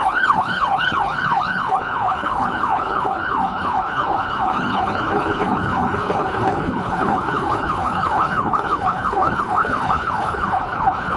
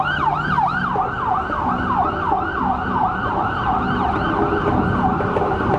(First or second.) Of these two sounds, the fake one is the first